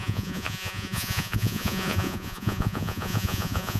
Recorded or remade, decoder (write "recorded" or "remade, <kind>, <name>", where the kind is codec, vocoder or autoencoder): remade, vocoder, Vocos